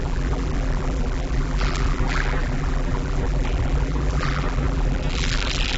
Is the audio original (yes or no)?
no